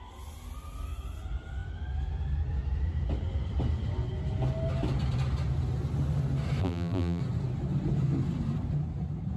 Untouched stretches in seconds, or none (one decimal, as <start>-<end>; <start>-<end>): 0.0-6.6; 7.2-9.4